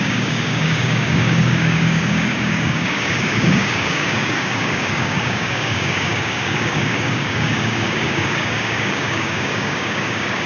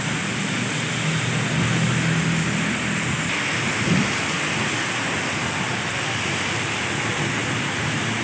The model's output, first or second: first